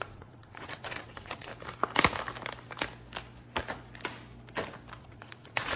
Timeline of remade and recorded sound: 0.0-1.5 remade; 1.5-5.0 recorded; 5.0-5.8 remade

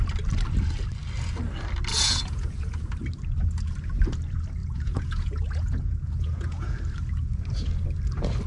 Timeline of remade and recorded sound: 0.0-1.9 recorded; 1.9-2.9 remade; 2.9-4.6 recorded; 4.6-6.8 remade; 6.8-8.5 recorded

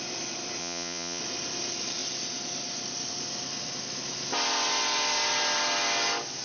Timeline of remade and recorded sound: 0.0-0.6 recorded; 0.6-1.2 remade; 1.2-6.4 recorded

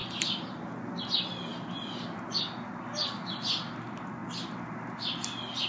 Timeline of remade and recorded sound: 0.0-5.7 recorded

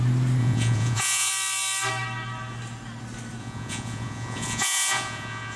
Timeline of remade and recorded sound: 0.0-0.4 recorded; 0.4-1.3 remade; 1.3-3.4 recorded; 3.4-5.6 remade

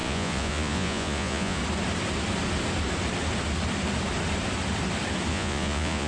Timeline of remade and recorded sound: 0.0-1.6 remade; 1.6-5.3 recorded; 5.3-6.1 remade

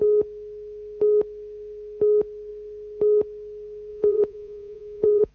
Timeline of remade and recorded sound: 0.0-3.9 recorded; 3.9-5.3 remade

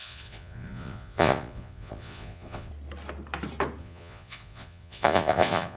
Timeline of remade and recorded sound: 0.0-2.7 remade; 2.7-3.8 recorded; 3.8-5.8 remade